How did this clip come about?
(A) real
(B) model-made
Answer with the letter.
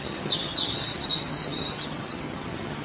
B